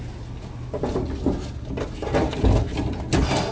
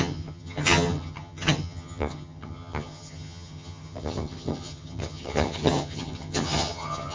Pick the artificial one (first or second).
second